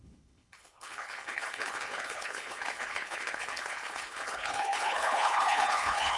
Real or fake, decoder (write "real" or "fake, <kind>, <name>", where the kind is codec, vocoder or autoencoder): fake, codec, HILCodec